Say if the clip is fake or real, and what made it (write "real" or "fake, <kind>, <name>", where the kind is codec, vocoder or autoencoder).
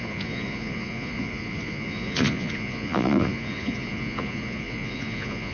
fake, vocoder, Vocos